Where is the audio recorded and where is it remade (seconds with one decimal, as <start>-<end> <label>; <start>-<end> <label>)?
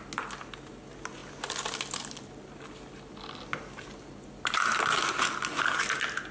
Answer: 0.0-6.3 recorded